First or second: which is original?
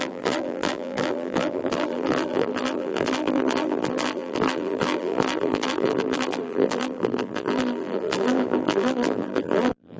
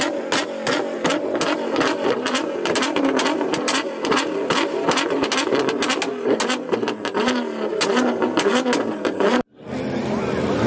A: second